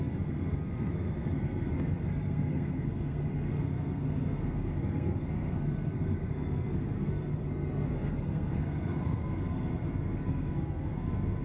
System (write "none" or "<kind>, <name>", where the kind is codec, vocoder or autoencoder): codec, SNAC